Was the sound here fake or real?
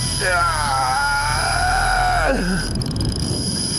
fake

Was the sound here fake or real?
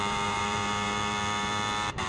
fake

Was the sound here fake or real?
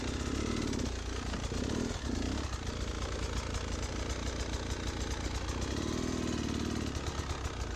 real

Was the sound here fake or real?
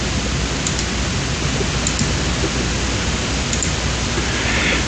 real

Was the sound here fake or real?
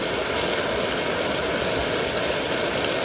fake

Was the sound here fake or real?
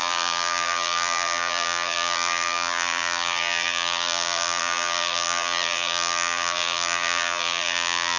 fake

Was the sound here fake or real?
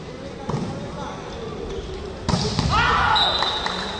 real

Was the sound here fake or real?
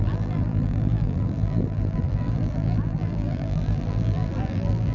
fake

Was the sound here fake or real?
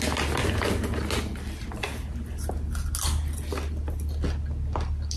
real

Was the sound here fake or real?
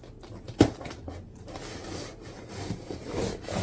real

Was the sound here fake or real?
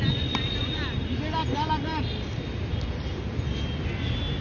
real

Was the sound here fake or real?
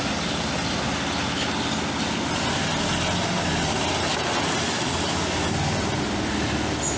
real